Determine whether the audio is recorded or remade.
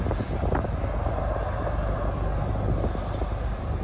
recorded